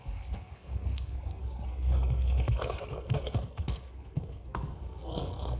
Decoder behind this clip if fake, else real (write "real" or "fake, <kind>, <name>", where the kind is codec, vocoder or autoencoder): fake, codec, SNAC